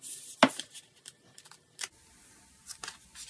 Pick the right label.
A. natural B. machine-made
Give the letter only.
A